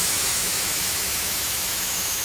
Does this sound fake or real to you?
fake